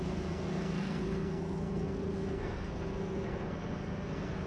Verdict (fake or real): fake